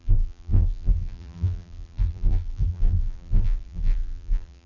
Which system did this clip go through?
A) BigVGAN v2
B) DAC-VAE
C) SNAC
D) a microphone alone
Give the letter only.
A